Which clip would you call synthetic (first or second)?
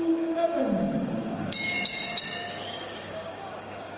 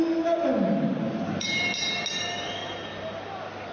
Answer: first